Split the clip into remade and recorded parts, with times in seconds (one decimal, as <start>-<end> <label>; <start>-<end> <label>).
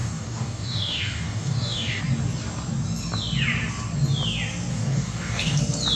0.0-2.0 remade; 2.0-4.7 recorded; 4.7-5.6 remade; 5.6-6.0 recorded